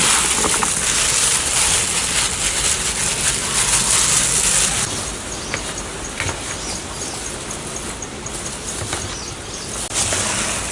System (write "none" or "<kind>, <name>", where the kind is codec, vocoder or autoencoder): none